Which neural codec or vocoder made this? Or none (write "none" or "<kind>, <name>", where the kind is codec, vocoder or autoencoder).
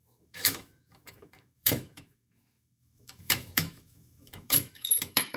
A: autoencoder, DAC-VAE